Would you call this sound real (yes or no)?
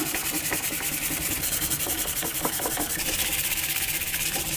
no